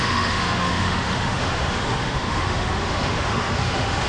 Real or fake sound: fake